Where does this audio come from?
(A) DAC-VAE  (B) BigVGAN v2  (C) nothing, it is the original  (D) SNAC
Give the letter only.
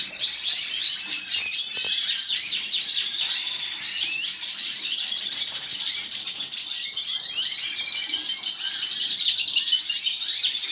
B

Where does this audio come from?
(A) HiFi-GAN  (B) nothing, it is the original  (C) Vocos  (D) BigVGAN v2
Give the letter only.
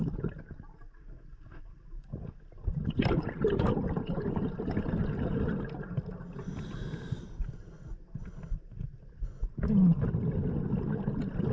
B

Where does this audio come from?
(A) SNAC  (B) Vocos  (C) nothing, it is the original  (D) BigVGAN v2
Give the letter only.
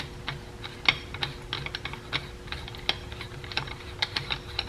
C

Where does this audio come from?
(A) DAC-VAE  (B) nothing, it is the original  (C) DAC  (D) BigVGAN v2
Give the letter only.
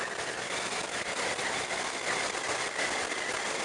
B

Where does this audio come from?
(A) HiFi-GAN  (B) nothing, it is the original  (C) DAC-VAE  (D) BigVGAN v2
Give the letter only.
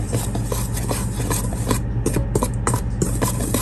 B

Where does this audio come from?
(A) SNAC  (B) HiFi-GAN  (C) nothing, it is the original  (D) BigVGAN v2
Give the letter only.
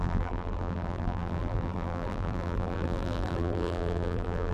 D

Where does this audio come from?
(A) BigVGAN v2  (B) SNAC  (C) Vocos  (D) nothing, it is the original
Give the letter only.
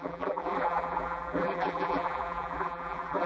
A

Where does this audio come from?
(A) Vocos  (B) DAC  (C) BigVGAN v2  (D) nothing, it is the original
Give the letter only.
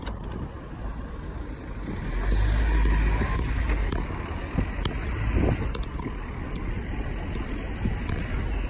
D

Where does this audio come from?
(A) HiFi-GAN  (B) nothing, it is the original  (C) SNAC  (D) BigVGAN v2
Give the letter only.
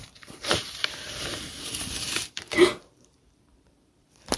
D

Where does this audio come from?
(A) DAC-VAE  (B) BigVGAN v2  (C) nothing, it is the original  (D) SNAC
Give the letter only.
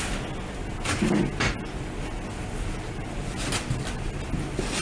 C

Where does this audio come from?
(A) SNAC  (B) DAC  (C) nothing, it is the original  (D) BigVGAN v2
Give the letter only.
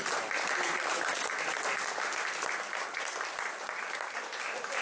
C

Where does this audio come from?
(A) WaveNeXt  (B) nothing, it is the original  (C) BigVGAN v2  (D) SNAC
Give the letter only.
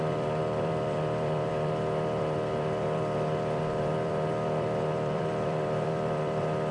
C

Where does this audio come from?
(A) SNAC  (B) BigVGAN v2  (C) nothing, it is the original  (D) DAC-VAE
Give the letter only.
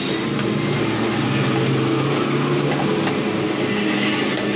C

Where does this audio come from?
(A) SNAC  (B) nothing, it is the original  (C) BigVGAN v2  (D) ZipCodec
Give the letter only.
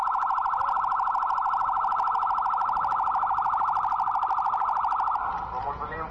B